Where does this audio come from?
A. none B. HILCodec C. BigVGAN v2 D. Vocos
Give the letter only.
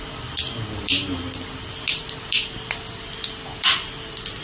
C